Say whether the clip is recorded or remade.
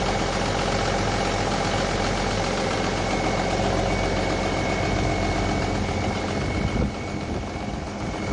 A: recorded